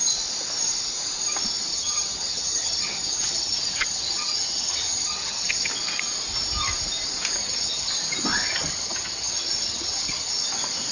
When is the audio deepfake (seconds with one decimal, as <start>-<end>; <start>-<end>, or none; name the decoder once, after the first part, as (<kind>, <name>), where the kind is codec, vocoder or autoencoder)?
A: 1.7-5.7 (vocoder, HiFi-GAN); 7.4-7.9; 8.3-10.3